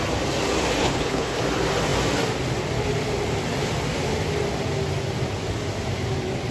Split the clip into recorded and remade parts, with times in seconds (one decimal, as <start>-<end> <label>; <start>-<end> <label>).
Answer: 0.0-0.8 recorded; 0.8-1.4 remade; 1.4-6.5 recorded